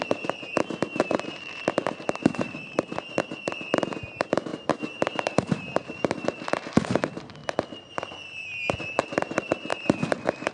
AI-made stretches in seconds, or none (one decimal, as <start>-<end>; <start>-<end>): 0.0-7.4; 8.8-10.5